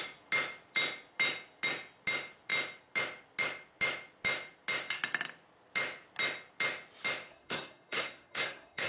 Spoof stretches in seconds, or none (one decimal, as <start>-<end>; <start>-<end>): 7.3-8.9